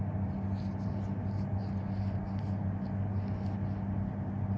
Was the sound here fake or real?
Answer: real